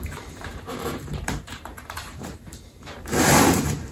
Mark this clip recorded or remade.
remade